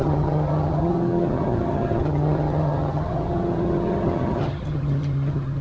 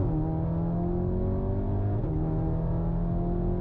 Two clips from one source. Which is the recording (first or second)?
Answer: second